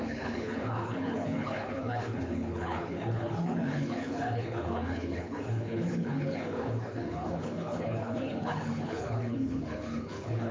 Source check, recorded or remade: remade